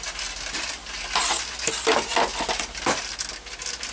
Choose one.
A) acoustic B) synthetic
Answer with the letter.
A